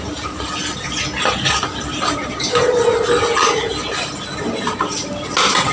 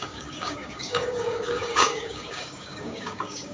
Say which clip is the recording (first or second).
first